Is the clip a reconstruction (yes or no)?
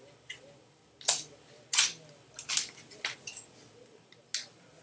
no